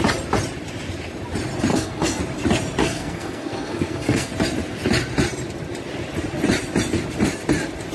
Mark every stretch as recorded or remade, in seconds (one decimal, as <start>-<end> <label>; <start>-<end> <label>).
0.0-1.7 recorded; 1.7-2.2 remade; 2.2-2.8 recorded; 2.8-4.3 remade; 4.3-7.9 recorded